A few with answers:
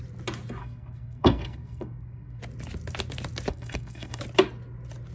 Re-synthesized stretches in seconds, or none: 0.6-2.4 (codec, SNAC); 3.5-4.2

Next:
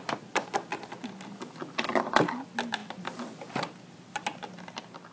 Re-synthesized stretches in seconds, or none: none